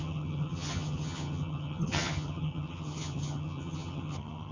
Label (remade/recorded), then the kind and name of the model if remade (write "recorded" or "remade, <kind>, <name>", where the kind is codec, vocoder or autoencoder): remade, vocoder, HiFi-GAN